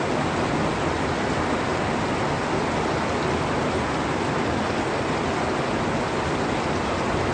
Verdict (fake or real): real